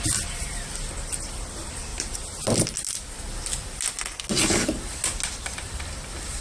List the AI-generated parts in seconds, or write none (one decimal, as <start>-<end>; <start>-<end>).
none